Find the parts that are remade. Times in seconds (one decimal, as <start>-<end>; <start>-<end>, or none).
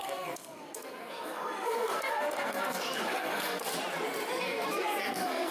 0.0-3.7; 4.4-5.5